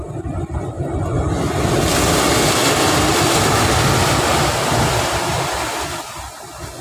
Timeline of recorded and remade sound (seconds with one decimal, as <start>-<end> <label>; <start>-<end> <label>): 0.0-6.8 recorded